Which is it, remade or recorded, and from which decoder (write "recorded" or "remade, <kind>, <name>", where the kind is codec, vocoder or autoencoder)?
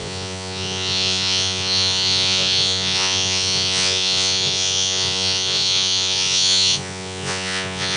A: remade, vocoder, Vocos